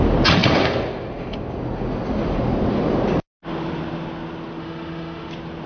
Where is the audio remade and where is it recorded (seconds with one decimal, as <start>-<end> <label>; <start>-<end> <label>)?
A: 0.0-4.6 recorded; 4.6-5.3 remade; 5.3-5.7 recorded